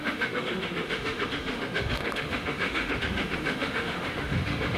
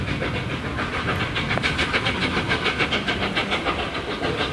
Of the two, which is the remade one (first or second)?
first